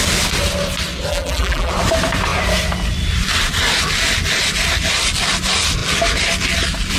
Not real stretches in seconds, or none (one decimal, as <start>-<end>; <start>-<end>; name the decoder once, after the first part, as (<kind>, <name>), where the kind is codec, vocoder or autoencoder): 1.1-1.7 (vocoder, BigVGAN v2)